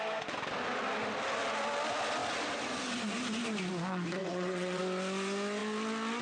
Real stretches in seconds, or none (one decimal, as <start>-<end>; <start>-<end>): 0.0-4.2; 4.8-6.2

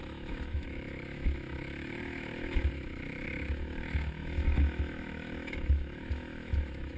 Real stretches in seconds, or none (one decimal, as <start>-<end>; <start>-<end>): none

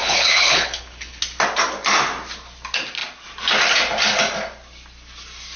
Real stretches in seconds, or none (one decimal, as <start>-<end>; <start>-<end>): 1.2-5.6